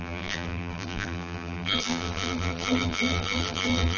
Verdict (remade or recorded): remade